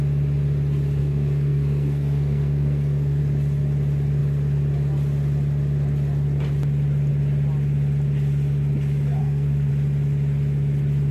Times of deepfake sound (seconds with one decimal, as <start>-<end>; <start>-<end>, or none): 1.0-3.2; 9.2-9.7